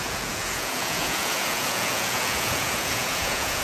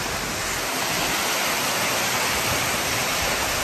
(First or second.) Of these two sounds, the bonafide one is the second